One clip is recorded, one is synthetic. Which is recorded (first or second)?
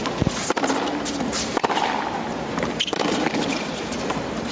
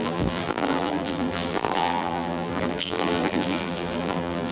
first